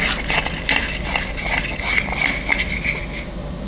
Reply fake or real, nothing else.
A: real